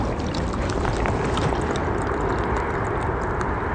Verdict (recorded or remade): recorded